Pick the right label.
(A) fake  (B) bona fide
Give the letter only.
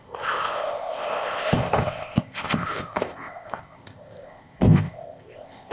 A